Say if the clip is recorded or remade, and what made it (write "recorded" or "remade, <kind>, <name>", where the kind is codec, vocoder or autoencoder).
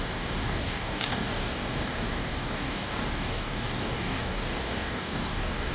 remade, codec, DAC